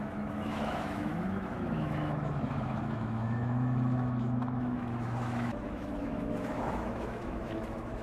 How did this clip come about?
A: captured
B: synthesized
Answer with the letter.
B